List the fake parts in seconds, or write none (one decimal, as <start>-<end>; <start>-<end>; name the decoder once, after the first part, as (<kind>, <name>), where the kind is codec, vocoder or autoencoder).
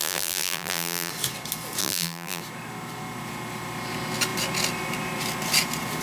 0.0-1.1 (vocoder, BigVGAN v2); 1.8-2.4